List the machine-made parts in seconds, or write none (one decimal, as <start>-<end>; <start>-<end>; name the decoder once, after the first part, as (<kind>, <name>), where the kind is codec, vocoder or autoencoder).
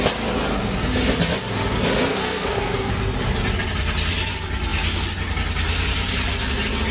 2.1-2.9 (codec, SNAC)